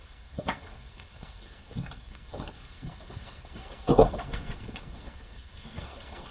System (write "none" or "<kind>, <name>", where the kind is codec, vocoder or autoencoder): codec, SNAC